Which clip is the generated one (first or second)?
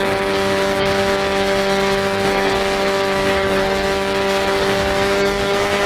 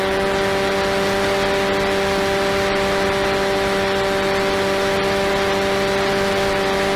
first